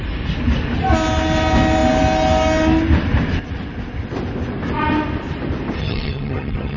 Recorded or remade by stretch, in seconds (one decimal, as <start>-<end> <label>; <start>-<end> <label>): 0.0-5.8 recorded; 5.8-6.8 remade